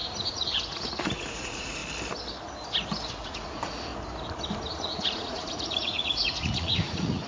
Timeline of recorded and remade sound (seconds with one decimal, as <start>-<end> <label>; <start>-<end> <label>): 0.0-1.8 remade; 1.8-3.1 recorded; 3.1-3.9 remade; 3.9-4.7 recorded; 4.7-7.3 remade

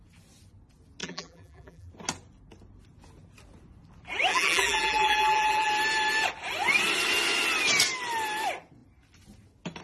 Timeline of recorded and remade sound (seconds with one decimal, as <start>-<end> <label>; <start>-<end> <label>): 0.0-1.0 recorded; 1.0-1.9 remade; 1.9-4.3 recorded; 4.3-5.7 remade; 5.7-9.8 recorded

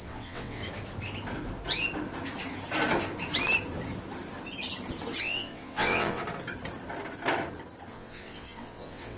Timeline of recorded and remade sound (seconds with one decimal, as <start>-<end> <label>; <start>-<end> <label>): 0.0-0.6 remade; 0.6-5.2 recorded; 5.2-6.2 remade; 6.2-7.9 recorded; 7.9-9.2 remade